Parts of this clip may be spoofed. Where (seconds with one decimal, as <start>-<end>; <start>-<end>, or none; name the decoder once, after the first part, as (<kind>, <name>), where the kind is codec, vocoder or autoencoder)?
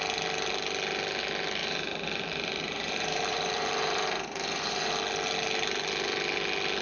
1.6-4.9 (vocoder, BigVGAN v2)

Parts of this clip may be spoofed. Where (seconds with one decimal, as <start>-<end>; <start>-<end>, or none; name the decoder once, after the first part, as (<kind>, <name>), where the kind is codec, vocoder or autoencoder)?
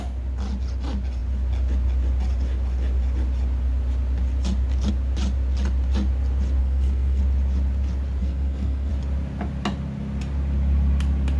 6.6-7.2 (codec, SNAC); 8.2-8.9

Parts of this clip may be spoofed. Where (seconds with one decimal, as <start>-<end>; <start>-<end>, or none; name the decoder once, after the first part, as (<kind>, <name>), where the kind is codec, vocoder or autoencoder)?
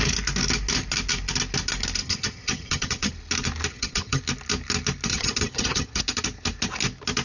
2.0-3.1 (vocoder, HiFi-GAN); 3.7-4.2; 5.1-6.0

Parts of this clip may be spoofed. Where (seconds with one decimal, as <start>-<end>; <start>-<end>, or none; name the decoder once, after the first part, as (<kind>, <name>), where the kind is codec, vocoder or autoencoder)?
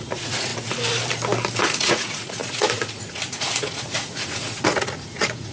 0.0-0.5 (vocoder, Vocos); 1.6-5.5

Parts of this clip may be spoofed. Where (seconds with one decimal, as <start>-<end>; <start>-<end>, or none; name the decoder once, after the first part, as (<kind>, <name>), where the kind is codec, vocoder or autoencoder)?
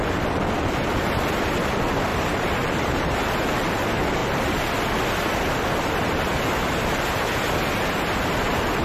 2.1-3.5 (vocoder, BigVGAN v2); 4.2-4.7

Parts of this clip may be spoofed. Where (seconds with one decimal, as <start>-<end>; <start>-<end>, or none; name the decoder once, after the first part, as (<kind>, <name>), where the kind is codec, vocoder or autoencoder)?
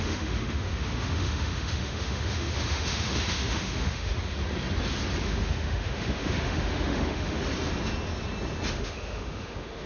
0.0-4.1 (autoencoder, DAC-VAE); 5.2-7.4; 8.7-9.9